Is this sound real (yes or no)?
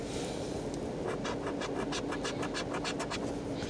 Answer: yes